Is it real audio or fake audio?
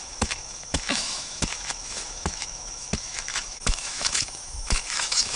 fake